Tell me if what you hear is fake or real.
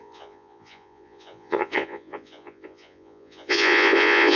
fake